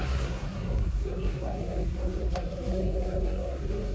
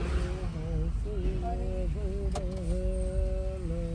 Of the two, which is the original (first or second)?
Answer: second